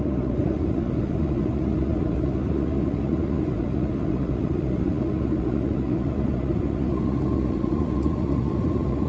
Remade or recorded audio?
remade